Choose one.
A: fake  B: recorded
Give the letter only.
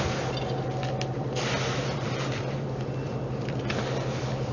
A